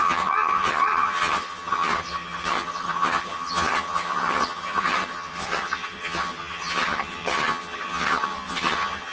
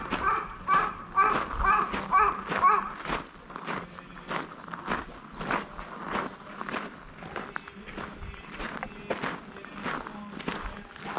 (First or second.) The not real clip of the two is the first